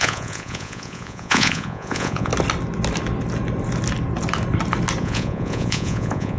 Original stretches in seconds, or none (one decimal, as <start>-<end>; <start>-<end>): 2.3-5.0